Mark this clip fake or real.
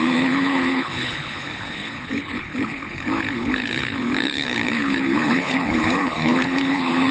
fake